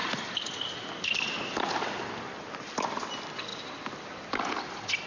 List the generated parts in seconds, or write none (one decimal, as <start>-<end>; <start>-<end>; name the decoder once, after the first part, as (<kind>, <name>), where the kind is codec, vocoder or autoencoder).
none

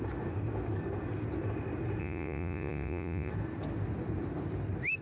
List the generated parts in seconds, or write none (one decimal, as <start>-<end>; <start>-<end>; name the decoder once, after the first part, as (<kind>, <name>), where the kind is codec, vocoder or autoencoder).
2.0-3.3 (vocoder, Vocos)

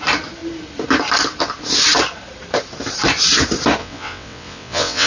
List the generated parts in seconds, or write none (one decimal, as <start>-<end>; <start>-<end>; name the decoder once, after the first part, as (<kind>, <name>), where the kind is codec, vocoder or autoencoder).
3.8-5.1 (vocoder, WaveNeXt)

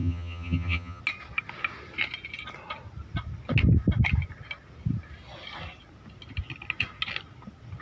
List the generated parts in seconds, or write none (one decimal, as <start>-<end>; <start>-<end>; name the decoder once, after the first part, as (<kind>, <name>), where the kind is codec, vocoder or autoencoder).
0.0-1.0 (vocoder, HiFi-GAN)

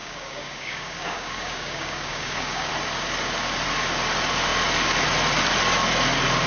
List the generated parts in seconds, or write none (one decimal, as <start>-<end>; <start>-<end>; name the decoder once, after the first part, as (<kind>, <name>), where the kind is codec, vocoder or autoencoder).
0.0-2.7 (codec, DAC)